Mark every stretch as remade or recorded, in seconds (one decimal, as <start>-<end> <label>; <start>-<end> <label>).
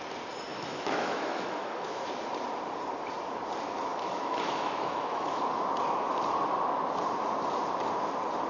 0.0-0.5 recorded; 0.5-2.1 remade; 2.1-3.9 recorded; 3.9-5.4 remade; 5.4-8.5 recorded